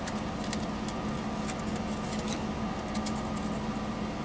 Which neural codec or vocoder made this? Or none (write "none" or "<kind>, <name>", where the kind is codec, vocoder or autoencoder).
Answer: none